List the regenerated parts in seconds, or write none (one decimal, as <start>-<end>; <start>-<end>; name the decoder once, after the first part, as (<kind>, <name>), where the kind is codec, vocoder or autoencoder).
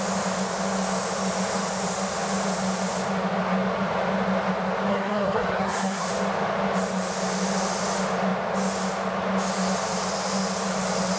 4.9-6.1 (codec, SNAC)